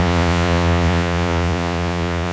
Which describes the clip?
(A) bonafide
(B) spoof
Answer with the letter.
B